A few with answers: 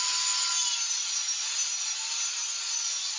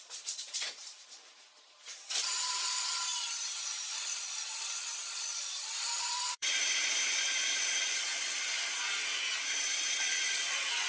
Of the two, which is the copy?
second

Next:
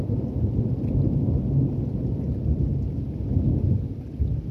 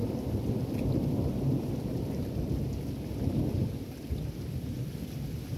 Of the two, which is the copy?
second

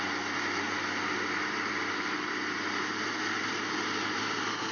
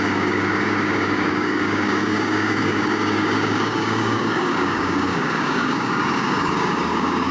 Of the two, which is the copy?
second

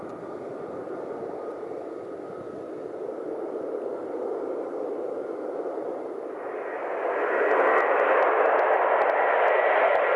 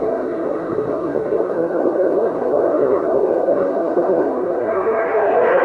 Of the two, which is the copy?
second